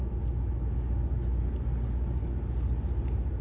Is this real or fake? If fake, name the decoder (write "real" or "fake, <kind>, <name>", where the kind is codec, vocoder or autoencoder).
real